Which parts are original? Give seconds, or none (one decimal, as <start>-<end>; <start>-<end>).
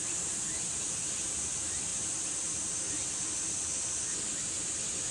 0.0-0.8; 1.9-5.1